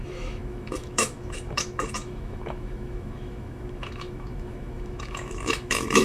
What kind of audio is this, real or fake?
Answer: fake